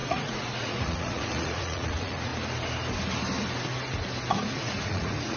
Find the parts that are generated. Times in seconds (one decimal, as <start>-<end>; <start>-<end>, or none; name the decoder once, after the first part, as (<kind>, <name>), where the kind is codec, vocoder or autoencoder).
0.0-2.3 (vocoder, Vocos); 4.3-5.4